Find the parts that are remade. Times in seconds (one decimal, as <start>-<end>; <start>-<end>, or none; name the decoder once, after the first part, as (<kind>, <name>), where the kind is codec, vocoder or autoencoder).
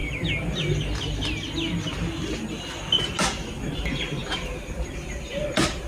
none